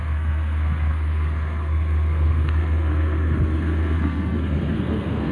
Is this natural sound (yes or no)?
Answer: no